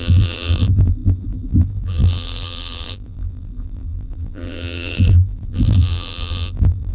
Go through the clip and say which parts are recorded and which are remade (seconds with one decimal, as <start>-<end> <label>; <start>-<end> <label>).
0.0-6.9 remade